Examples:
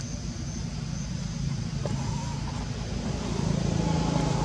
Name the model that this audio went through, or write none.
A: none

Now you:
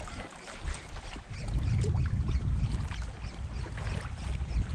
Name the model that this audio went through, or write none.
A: none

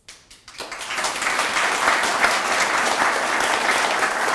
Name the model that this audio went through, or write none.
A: none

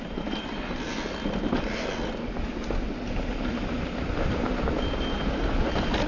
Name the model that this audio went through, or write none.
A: none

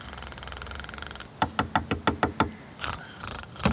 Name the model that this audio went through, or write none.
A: none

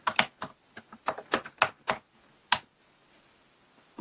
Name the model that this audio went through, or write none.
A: none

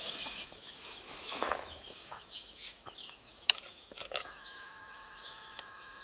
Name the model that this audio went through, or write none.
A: autoencoder, DAC-VAE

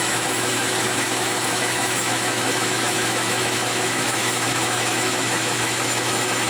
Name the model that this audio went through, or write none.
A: autoencoder, DAC-VAE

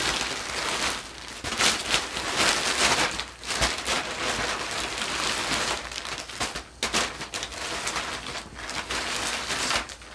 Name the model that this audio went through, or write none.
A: none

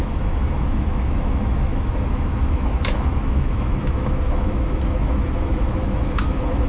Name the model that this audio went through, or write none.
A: autoencoder, DAC-VAE